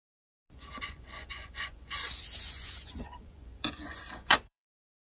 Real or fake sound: fake